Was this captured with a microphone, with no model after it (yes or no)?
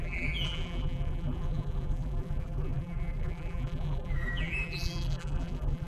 no